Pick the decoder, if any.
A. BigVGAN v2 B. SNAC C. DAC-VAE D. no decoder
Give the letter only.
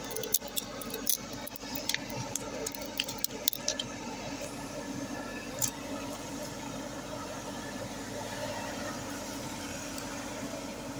D